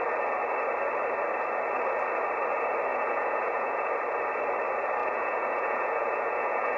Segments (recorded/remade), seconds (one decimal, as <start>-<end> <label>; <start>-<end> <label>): 0.0-2.9 recorded; 2.9-3.9 remade; 3.9-5.0 recorded; 5.0-6.8 remade